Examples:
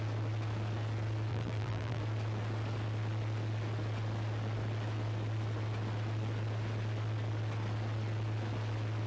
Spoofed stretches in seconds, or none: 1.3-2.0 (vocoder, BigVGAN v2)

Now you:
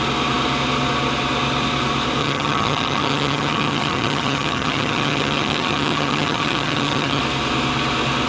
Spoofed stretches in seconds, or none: 2.2-7.2 (vocoder, HiFi-GAN)

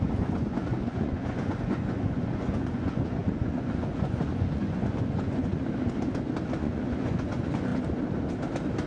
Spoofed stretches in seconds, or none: 0.0-5.6 (vocoder, Vocos); 6.6-7.7

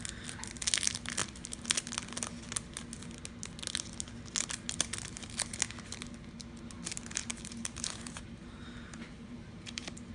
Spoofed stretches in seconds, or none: 7.2-10.1 (vocoder, BigVGAN v2)

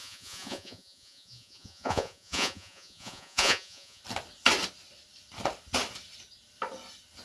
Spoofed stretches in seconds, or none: 0.0-4.0 (vocoder, Vocos)